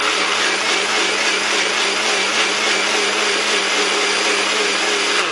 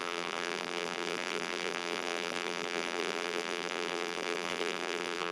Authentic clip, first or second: first